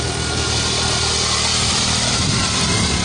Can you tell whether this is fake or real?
real